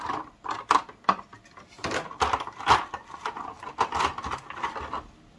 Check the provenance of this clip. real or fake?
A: real